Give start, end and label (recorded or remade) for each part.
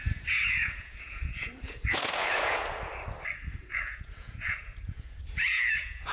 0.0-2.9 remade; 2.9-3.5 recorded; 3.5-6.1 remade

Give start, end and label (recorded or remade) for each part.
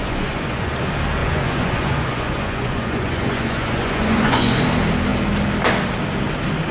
0.0-0.7 remade; 0.7-1.2 recorded; 1.2-4.6 remade; 4.6-6.7 recorded